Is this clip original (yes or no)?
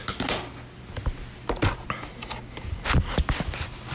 yes